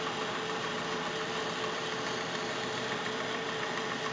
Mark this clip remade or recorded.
remade